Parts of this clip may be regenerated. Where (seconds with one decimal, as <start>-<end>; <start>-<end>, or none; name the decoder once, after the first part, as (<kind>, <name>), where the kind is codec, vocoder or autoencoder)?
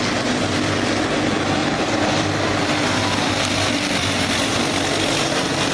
1.6-5.0 (vocoder, BigVGAN v2)